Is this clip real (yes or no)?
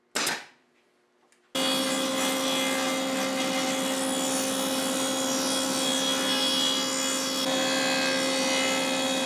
yes